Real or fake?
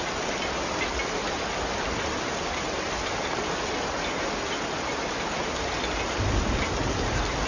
real